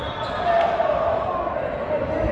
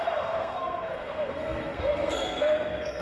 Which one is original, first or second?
first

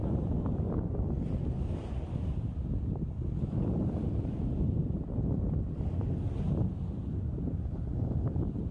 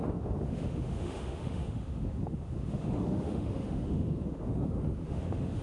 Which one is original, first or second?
first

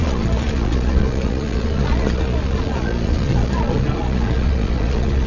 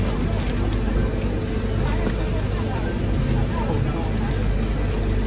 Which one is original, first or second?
second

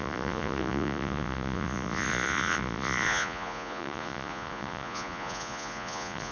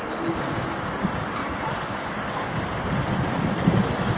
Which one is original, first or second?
second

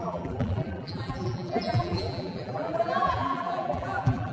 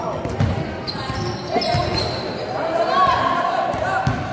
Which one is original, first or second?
second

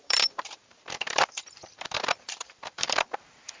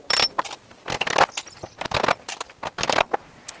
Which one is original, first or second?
second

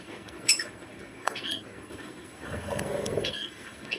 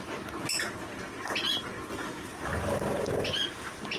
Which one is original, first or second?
second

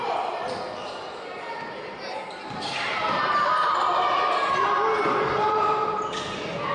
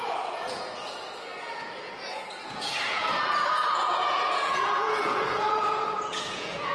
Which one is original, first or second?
first